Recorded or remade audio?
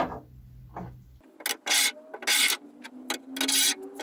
recorded